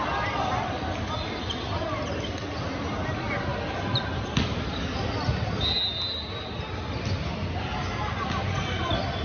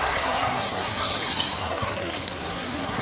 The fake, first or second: second